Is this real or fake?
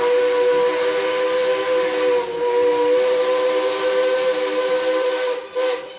real